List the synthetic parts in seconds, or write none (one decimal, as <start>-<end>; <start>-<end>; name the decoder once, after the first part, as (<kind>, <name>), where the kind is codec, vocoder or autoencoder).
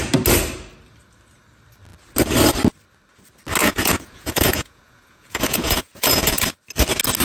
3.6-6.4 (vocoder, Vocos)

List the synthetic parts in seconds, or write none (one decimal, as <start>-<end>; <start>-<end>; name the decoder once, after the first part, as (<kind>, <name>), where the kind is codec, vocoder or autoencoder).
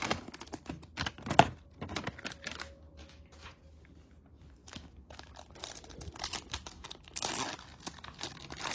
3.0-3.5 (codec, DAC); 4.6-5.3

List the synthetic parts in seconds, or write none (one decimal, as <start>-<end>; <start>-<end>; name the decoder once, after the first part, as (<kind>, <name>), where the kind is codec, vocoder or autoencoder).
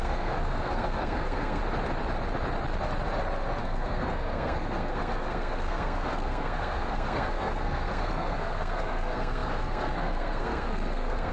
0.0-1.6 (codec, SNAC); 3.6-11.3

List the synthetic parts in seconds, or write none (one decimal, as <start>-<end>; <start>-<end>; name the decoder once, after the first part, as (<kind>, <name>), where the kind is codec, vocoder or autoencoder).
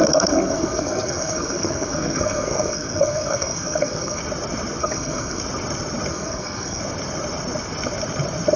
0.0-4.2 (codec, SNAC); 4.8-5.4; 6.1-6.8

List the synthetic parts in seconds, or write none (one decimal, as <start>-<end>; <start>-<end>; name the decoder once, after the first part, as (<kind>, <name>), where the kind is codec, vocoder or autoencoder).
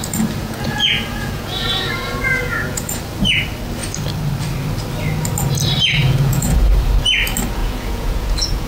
0.4-3.0 (vocoder, Vocos); 6.0-6.7; 7.6-8.7